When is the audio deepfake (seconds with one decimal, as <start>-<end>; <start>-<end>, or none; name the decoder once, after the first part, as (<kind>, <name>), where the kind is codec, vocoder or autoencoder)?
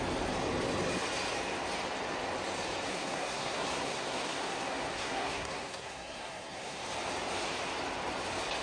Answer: 2.9-6.8 (codec, SNAC)